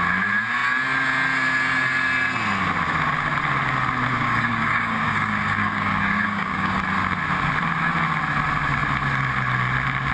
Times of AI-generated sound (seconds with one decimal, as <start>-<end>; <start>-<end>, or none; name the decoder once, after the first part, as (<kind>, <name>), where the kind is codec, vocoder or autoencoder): 4.1-6.8 (codec, DAC)